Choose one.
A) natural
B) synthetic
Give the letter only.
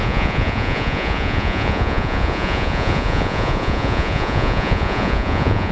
B